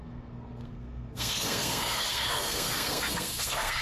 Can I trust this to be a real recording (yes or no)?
no